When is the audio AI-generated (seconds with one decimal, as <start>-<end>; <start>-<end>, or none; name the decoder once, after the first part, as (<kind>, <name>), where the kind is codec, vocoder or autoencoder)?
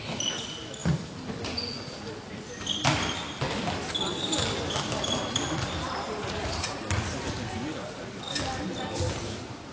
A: 6.2-6.8 (vocoder, Vocos)